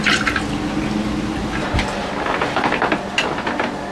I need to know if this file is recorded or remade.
recorded